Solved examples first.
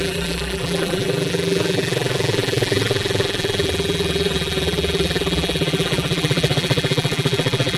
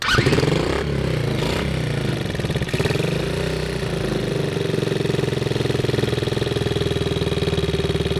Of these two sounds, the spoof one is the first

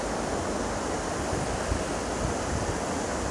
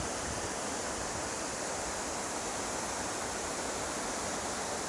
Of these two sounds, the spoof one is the second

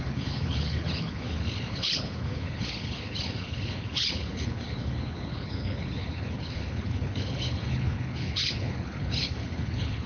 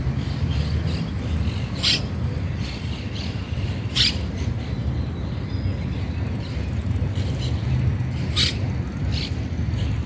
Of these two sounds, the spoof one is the first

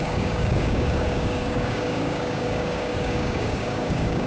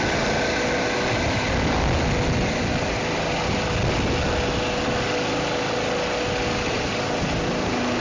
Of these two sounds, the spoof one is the first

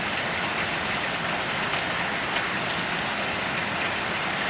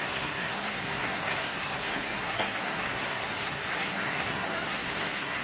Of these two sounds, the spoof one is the second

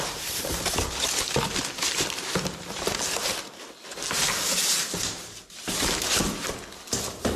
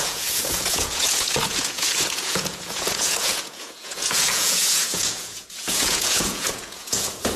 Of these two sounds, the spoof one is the second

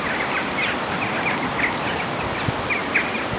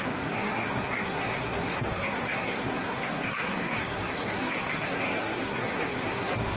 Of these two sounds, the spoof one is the second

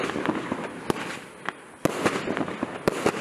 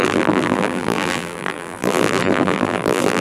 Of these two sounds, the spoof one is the second